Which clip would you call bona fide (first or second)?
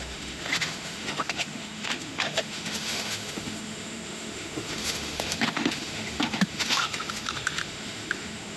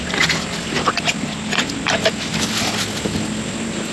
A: second